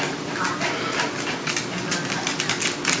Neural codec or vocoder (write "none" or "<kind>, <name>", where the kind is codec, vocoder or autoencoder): none